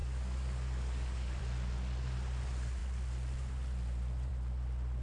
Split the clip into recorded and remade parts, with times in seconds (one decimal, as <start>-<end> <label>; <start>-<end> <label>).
0.0-1.4 remade; 1.4-5.0 recorded